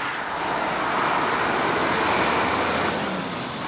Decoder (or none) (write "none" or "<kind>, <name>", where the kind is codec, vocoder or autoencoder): none